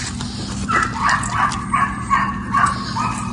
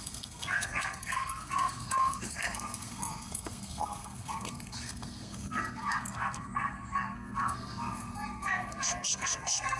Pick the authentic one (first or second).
first